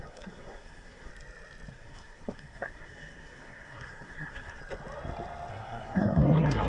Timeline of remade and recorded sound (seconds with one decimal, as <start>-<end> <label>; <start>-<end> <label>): 0.0-1.1 remade; 1.1-1.7 recorded; 1.7-4.6 remade; 4.6-5.5 recorded; 5.5-6.7 remade